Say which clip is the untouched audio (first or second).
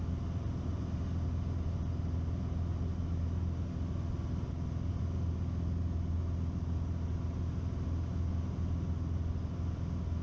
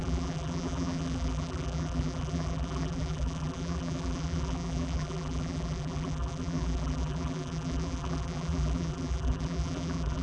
first